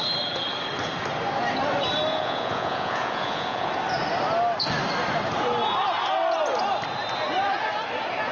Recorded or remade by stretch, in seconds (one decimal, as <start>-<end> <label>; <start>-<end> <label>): 0.0-2.1 recorded; 2.1-3.7 remade; 3.7-8.3 recorded

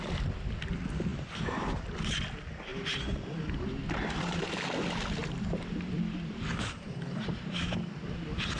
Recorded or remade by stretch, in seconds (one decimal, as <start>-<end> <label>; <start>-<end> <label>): 0.0-2.7 recorded; 2.7-4.5 remade; 4.5-5.2 recorded; 5.2-7.8 remade; 7.8-8.6 recorded

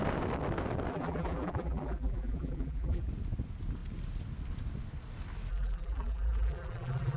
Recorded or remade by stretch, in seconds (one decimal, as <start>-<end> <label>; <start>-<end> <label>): 0.0-0.9 recorded; 0.9-3.1 remade; 3.1-5.5 recorded; 5.5-7.2 remade

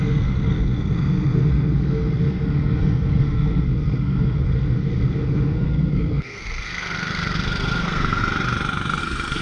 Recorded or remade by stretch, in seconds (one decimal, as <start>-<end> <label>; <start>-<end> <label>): 0.0-8.2 remade; 8.2-9.0 recorded; 9.0-9.4 remade

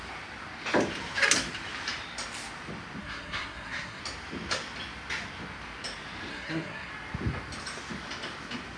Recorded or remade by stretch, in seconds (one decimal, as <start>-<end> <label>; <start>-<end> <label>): 0.0-3.0 recorded; 3.0-4.0 remade; 4.0-6.3 recorded; 6.3-6.9 remade; 6.9-8.8 recorded